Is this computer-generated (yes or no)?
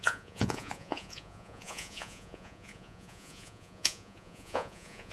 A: yes